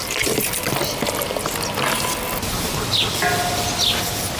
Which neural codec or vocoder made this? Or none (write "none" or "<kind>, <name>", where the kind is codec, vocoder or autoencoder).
none